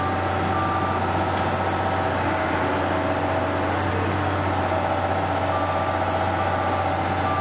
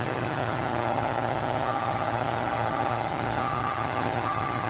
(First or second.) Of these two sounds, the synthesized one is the second